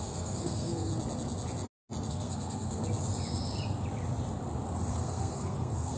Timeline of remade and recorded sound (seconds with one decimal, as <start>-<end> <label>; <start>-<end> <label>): 0.0-0.9 remade; 0.9-2.1 recorded; 2.1-2.8 remade; 2.8-4.9 recorded; 4.9-6.0 remade